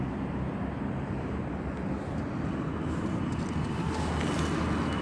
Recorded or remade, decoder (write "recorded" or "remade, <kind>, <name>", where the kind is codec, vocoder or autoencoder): recorded